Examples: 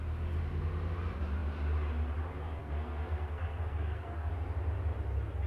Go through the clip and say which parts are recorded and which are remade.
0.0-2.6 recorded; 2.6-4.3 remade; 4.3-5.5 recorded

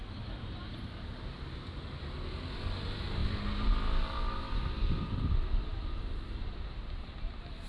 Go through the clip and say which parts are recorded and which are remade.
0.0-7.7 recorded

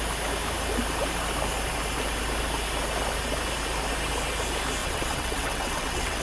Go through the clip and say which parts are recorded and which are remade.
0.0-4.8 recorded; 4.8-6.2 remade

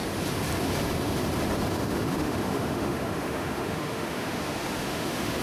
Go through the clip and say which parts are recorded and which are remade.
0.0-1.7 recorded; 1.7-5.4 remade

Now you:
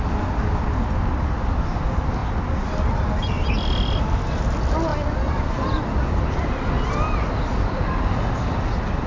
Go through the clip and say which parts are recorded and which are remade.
0.0-9.1 recorded

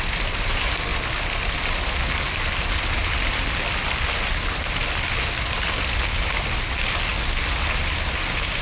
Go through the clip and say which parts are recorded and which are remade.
0.0-8.6 recorded

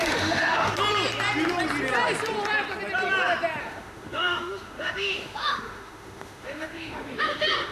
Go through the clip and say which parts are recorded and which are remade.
0.0-0.7 remade; 0.7-3.6 recorded; 3.6-7.7 remade

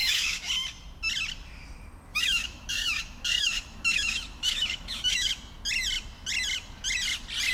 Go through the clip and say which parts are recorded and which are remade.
0.0-0.5 remade; 0.5-2.1 recorded; 2.1-5.3 remade; 5.3-7.5 recorded